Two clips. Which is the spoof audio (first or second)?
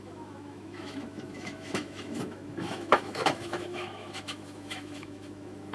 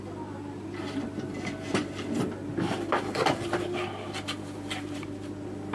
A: first